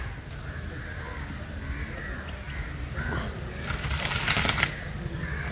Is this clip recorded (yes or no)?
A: yes